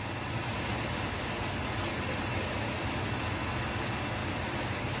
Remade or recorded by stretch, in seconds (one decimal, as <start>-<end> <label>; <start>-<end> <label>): 0.0-0.5 recorded; 0.5-2.8 remade; 2.8-4.2 recorded; 4.2-5.0 remade